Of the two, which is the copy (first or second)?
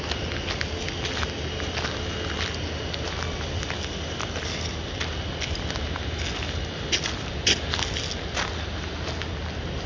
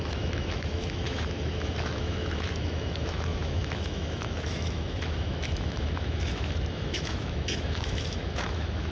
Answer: second